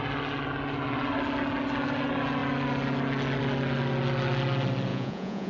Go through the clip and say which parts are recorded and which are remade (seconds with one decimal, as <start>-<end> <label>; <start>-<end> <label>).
0.0-4.9 recorded; 4.9-5.5 remade